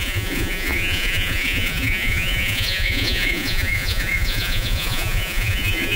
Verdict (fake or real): fake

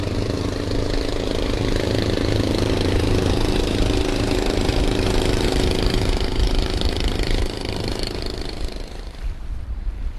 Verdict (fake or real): fake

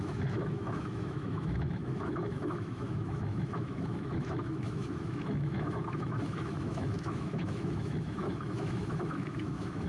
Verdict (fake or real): fake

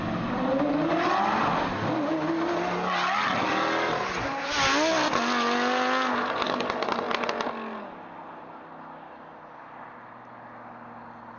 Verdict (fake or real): real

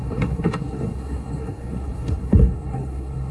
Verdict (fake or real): fake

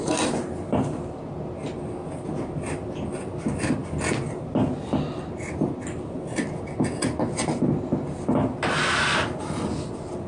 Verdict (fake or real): real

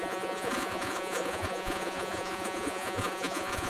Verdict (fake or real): fake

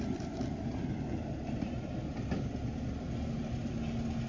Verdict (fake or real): real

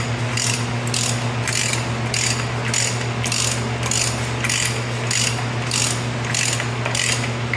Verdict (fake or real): real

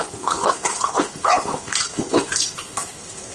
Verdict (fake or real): fake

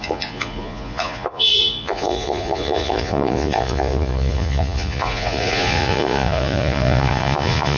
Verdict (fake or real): fake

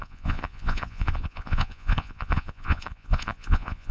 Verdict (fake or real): fake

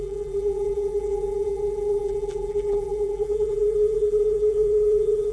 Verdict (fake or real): fake